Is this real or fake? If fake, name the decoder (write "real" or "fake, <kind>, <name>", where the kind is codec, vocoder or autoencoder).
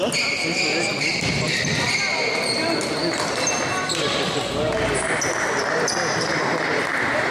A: real